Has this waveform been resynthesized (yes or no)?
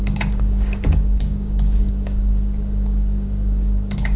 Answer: yes